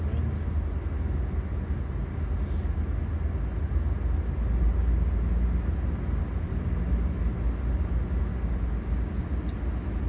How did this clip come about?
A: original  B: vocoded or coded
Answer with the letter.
A